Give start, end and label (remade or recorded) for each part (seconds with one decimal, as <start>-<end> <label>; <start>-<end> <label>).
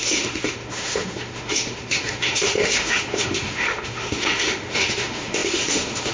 0.0-6.1 remade